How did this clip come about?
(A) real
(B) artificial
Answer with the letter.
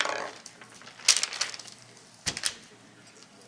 A